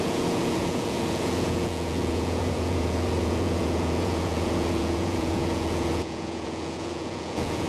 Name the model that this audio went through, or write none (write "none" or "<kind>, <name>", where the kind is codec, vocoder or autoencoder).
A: vocoder, Vocos